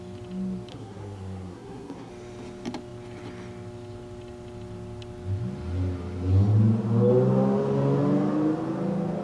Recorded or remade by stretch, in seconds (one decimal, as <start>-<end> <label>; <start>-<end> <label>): 0.0-0.7 recorded; 0.7-2.1 remade; 2.1-9.2 recorded